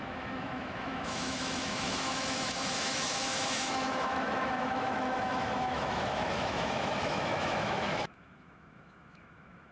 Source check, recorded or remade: remade